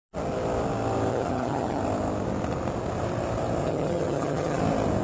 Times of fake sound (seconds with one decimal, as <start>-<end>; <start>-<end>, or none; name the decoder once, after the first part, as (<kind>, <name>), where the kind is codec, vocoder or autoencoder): 1.1-1.8 (vocoder, HiFi-GAN); 3.6-4.6